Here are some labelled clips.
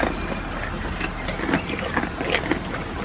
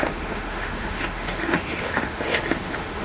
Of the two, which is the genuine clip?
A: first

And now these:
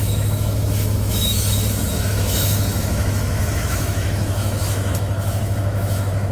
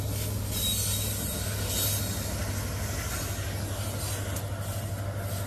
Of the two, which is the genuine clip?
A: second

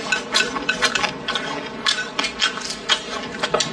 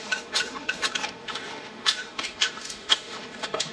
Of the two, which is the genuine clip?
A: first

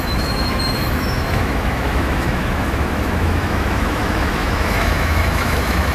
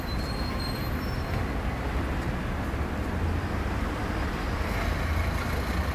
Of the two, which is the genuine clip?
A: second